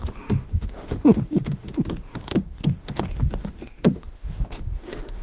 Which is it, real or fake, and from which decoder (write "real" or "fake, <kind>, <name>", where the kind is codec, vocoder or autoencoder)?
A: fake, autoencoder, DAC-VAE